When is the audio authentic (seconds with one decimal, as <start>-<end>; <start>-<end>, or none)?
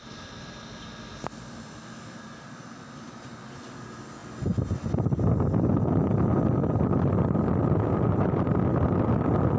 0.0-9.6